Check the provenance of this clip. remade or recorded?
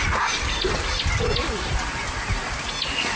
recorded